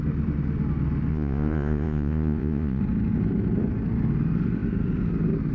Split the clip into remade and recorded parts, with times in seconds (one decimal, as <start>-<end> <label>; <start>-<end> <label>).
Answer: 0.0-1.1 recorded; 1.1-2.8 remade; 2.8-5.5 recorded